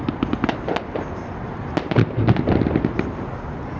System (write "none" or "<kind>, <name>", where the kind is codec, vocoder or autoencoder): none